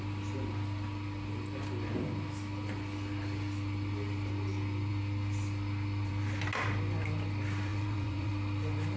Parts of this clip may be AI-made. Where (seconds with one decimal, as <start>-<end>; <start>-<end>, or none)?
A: 7.7-8.3